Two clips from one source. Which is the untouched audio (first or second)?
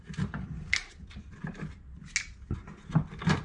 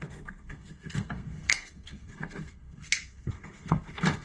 first